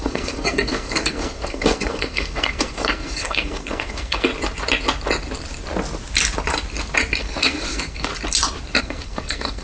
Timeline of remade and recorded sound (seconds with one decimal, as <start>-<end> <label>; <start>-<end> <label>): 0.0-4.3 remade; 4.3-7.2 recorded; 7.2-8.1 remade; 8.1-8.8 recorded; 8.8-9.6 remade